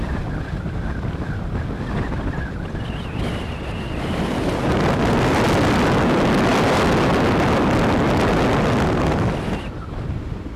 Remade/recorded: recorded